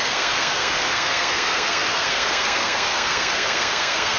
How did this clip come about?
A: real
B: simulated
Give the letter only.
B